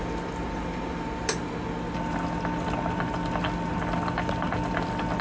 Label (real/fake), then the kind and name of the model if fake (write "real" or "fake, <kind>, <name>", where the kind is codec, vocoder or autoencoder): real